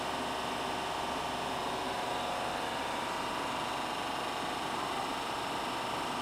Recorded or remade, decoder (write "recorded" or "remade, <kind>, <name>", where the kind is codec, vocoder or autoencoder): recorded